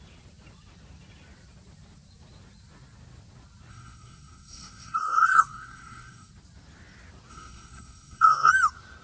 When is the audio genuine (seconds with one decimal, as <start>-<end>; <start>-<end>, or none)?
0.0-3.7; 6.3-7.3; 8.5-9.0